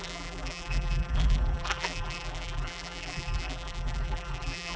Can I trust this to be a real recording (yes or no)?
no